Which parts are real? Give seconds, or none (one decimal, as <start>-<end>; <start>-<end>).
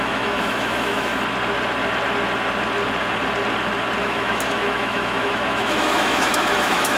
1.1-4.0